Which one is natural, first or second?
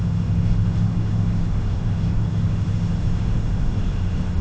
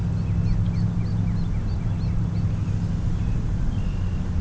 second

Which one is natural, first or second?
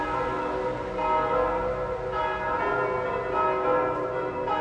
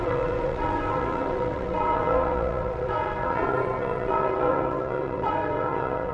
first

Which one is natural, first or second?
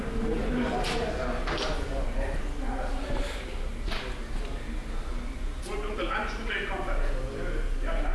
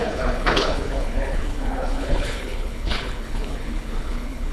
first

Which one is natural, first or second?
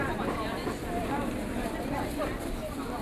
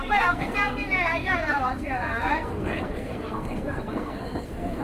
first